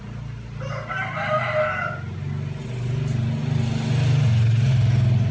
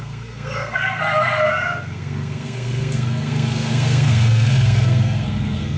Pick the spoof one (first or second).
second